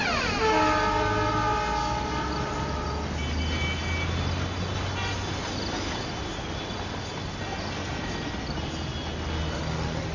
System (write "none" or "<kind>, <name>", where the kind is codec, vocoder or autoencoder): none